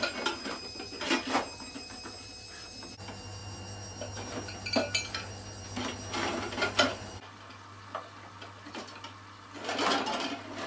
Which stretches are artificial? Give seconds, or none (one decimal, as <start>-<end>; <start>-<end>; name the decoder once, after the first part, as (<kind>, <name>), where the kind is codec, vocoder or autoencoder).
none

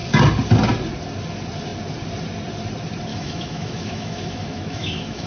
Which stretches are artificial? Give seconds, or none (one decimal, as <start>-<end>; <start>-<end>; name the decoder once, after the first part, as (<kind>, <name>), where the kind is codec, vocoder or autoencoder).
3.1-5.3 (autoencoder, DAC-VAE)

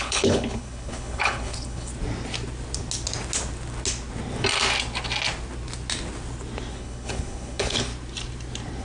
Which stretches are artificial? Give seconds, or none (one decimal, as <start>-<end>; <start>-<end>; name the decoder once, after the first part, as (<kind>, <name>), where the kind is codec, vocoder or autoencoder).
0.0-1.9 (codec, HILCodec); 6.7-7.9

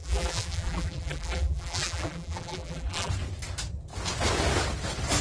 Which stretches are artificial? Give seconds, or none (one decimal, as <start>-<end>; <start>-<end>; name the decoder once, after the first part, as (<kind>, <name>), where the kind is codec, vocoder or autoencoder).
0.0-3.1 (vocoder, BigVGAN v2)

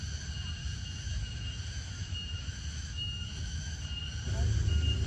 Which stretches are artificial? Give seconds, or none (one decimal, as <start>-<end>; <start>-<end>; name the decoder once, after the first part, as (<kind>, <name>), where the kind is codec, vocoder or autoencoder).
0.6-3.7 (autoencoder, DAC-VAE)